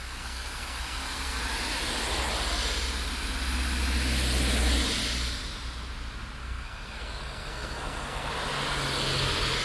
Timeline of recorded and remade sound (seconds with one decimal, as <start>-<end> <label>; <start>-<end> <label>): 0.0-1.4 remade; 1.4-6.4 recorded; 6.4-8.3 remade; 8.3-9.6 recorded